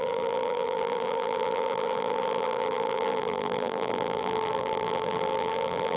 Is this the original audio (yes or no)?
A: no